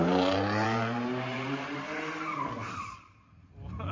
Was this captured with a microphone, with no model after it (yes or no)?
no